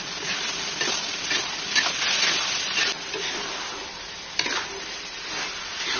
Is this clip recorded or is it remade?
recorded